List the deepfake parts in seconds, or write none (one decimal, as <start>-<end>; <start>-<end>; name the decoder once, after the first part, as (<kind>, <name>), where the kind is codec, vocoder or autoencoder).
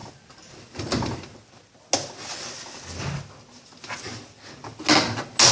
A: none